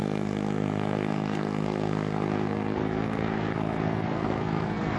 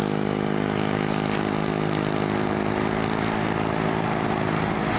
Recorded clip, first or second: second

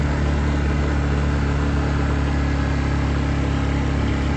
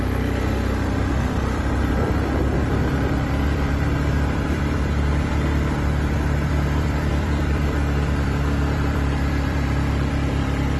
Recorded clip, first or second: first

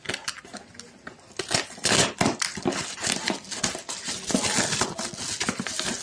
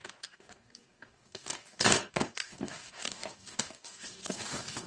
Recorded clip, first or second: first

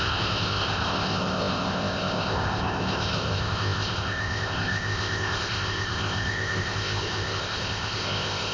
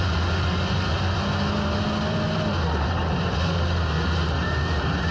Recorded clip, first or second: second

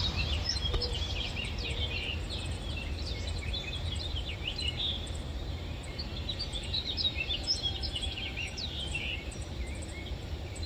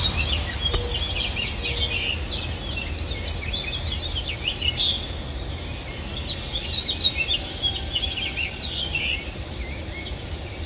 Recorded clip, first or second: second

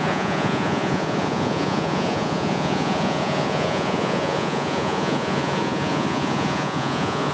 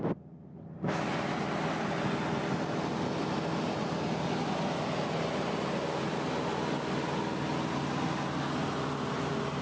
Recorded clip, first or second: second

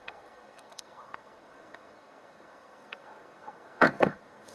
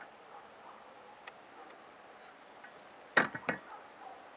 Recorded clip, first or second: second